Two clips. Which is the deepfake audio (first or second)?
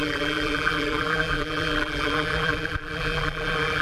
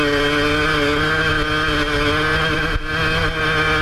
first